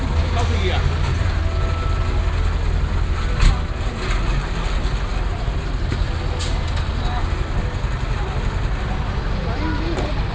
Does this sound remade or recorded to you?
recorded